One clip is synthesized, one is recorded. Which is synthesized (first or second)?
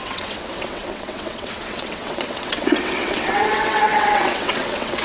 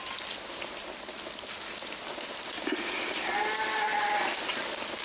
first